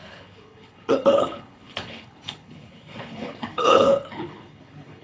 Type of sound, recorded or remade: remade